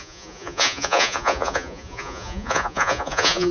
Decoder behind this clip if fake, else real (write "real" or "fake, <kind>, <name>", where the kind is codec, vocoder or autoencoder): fake, vocoder, Vocos